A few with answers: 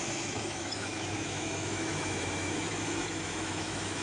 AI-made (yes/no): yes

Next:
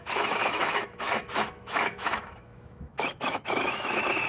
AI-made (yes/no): yes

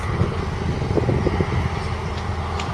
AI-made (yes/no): no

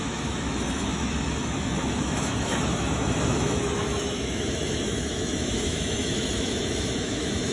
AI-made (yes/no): yes